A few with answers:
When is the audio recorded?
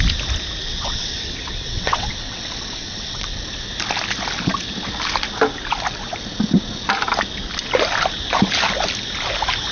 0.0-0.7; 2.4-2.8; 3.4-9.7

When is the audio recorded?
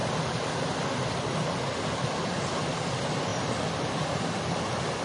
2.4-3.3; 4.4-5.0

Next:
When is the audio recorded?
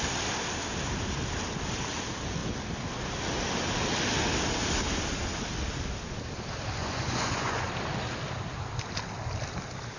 0.0-6.8; 7.7-10.0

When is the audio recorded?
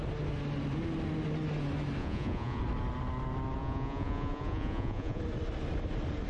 0.0-2.0; 2.6-3.6; 5.2-6.3